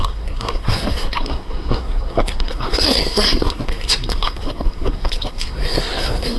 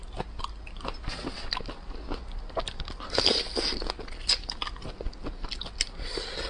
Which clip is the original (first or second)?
second